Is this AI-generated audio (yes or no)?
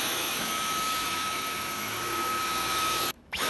yes